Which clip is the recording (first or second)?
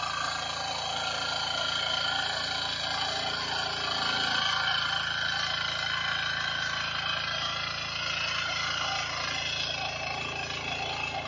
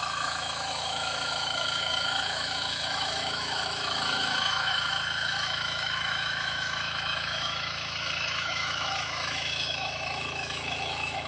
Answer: first